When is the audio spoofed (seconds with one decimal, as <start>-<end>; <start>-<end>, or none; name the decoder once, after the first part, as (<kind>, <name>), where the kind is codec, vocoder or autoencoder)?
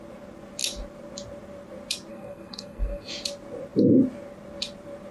2.1-3.1 (codec, SNAC)